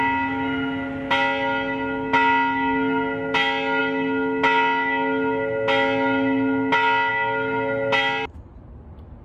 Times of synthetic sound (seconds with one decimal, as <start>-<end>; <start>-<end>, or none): none

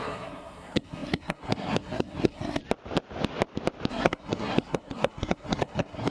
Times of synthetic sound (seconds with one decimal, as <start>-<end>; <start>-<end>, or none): 0.0-2.6; 3.9-6.1

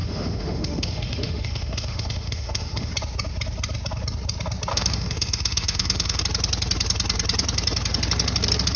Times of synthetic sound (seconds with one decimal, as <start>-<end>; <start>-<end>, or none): 0.0-2.9; 4.7-6.2

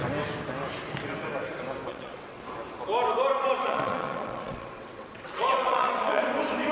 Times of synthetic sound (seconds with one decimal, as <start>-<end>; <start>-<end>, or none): 1.9-2.4; 3.6-6.2

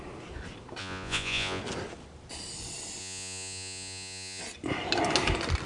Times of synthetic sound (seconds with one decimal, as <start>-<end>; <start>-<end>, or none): 0.8-1.6; 3.0-4.4